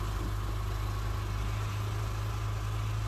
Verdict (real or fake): real